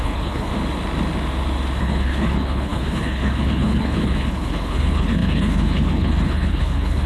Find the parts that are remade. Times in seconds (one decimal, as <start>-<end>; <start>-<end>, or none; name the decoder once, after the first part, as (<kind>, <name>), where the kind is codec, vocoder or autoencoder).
0.0-0.5 (codec, HILCodec); 1.8-7.1